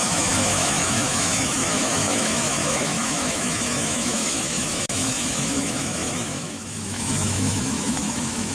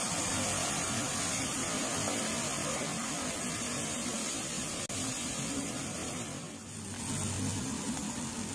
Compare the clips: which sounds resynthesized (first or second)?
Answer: first